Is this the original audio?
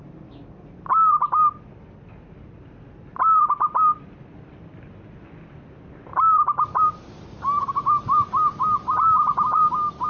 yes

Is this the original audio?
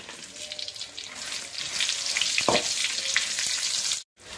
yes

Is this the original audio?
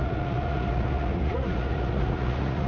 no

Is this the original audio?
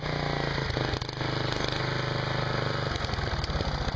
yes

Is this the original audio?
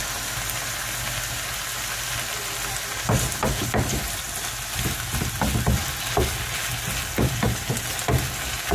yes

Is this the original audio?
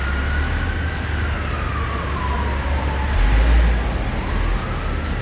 yes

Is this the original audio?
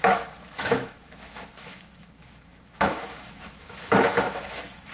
no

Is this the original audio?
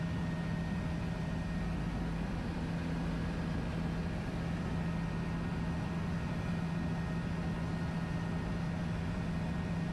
yes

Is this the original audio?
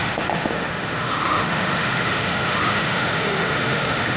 no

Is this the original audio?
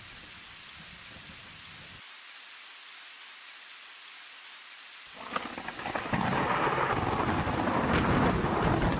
yes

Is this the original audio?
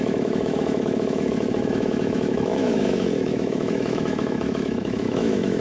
no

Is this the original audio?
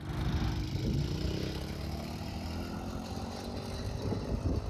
yes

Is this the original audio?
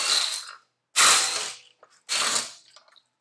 yes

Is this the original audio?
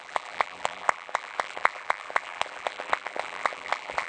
no